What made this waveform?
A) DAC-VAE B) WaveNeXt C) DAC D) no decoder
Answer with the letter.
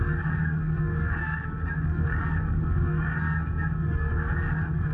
C